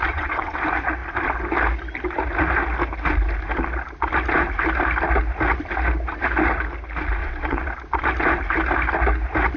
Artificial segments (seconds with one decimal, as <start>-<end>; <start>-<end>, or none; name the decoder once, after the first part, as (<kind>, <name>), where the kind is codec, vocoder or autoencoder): 0.0-0.6 (vocoder, WaveNeXt); 7.2-7.7